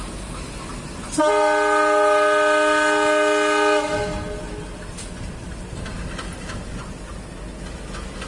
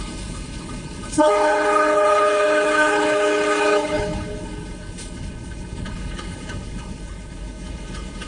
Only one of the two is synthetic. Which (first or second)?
second